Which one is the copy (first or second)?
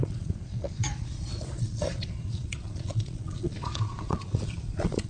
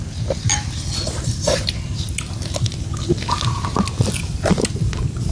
first